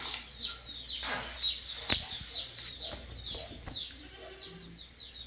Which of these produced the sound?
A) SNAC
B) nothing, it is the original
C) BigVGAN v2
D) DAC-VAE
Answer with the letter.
B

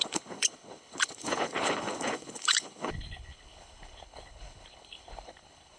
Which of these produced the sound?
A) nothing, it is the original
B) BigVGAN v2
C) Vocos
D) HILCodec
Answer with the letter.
D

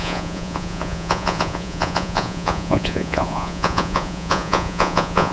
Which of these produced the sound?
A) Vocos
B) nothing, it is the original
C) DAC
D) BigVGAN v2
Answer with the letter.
A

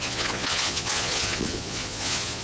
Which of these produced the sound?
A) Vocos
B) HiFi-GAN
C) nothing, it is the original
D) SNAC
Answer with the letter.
A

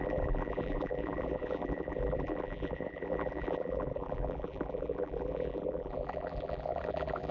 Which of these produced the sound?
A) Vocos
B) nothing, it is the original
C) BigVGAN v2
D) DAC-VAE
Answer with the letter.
C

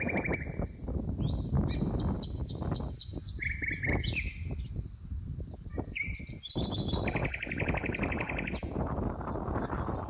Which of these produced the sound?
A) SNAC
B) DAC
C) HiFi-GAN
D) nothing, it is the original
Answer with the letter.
D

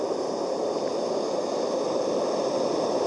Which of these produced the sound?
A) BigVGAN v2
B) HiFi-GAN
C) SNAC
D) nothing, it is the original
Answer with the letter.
D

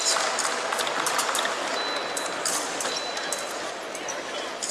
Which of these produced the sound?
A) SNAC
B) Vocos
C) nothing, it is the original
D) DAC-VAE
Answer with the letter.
C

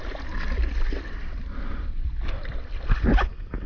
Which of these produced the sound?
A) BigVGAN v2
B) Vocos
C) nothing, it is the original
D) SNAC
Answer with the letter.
A